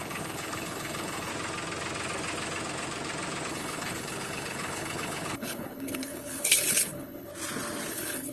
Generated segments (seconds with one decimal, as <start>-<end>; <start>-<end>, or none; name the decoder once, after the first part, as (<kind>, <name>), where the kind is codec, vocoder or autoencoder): 0.0-1.3 (codec, HILCodec); 3.5-7.3; 7.9-8.3